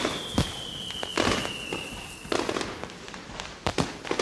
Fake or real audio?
real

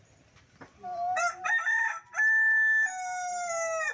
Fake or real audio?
real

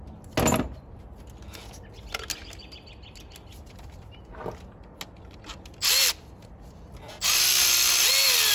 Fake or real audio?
real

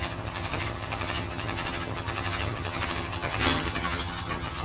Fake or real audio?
fake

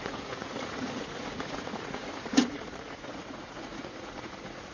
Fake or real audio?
fake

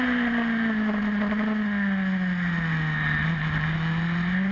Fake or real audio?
real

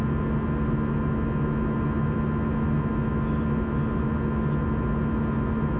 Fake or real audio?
real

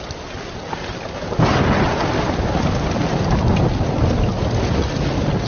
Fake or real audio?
real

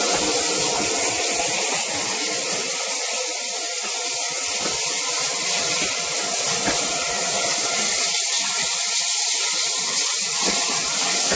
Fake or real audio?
real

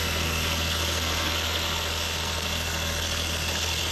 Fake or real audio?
fake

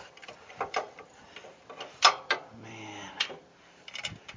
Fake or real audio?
fake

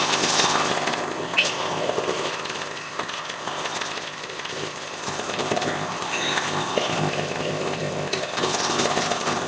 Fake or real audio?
fake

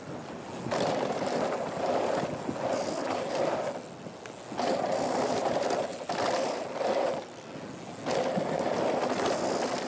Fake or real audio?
real